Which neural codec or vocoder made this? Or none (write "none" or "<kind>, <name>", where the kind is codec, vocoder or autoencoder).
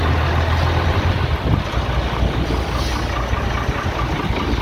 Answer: none